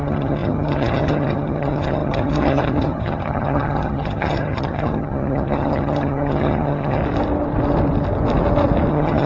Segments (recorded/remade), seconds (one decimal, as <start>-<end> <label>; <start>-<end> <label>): 0.0-7.0 remade; 7.0-8.9 recorded; 8.9-9.3 remade